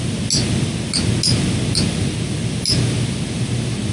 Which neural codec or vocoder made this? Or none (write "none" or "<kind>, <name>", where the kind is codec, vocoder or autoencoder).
none